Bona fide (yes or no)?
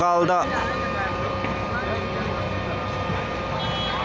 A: yes